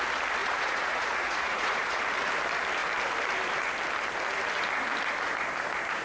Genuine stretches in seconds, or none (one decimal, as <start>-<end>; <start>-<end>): 0.0-0.4; 2.0-6.0